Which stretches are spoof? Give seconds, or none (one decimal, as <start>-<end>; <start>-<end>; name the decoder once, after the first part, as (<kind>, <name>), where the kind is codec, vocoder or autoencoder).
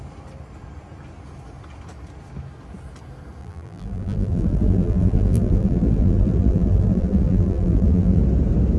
3.4-8.2 (vocoder, BigVGAN v2)